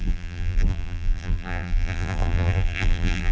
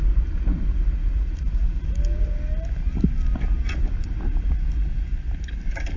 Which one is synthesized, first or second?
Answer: first